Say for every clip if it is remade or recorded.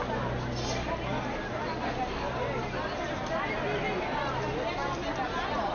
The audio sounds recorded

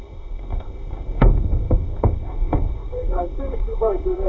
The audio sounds remade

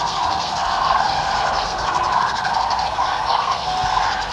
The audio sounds remade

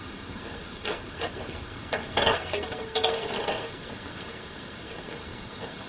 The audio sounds remade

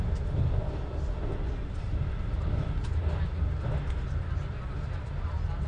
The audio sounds recorded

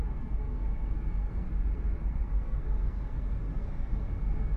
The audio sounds remade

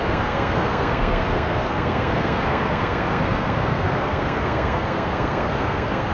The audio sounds remade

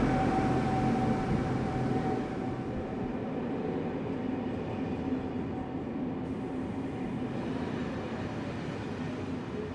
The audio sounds recorded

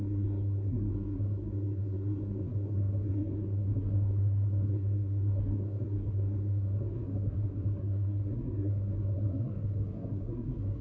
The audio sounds remade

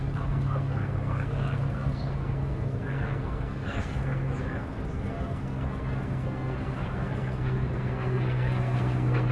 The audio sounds remade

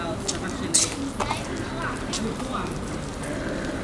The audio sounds recorded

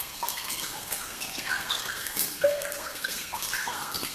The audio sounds remade